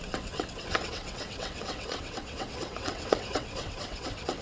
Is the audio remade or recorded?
remade